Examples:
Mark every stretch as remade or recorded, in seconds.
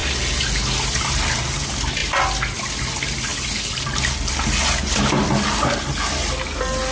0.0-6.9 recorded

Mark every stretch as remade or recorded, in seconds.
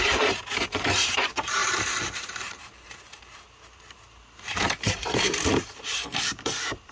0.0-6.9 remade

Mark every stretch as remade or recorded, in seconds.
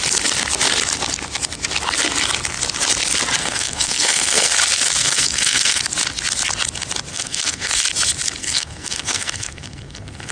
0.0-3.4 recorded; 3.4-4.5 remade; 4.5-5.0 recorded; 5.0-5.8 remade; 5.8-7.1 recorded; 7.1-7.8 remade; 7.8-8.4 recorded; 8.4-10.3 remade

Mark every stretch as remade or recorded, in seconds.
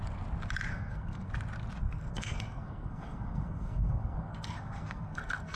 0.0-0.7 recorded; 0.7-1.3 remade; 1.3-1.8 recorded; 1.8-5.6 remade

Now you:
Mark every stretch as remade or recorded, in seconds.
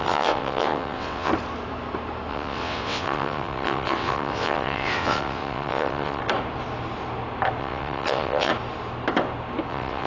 0.0-1.3 remade; 1.3-2.3 recorded; 2.3-6.2 remade; 6.2-7.6 recorded; 7.6-8.5 remade; 8.5-9.7 recorded; 9.7-10.1 remade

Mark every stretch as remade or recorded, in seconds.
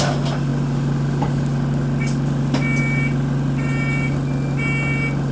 0.0-5.3 recorded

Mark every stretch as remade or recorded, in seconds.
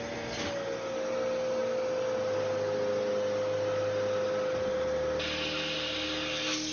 0.0-6.7 recorded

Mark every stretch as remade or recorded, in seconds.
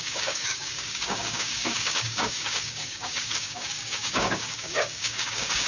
0.0-5.7 remade